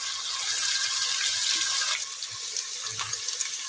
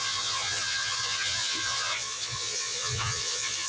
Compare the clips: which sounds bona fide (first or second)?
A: first